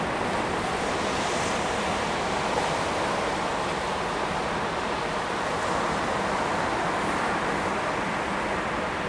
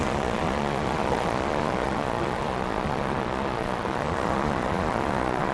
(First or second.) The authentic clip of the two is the first